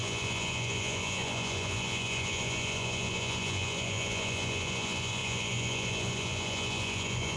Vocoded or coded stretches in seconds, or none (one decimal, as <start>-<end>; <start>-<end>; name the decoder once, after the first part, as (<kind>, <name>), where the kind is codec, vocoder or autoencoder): 0.0-7.4 (vocoder, Vocos)